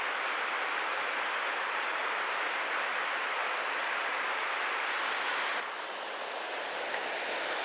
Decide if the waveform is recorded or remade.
recorded